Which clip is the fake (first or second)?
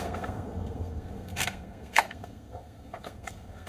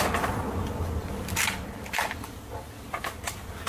first